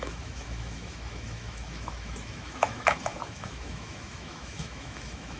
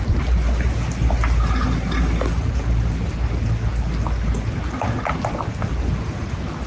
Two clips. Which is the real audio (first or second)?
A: second